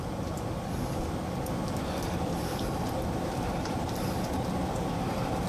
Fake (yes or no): yes